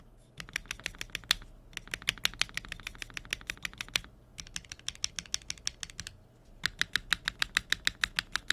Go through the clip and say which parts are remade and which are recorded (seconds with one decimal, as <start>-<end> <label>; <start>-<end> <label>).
0.0-8.5 recorded